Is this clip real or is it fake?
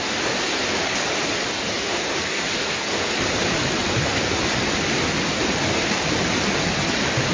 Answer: real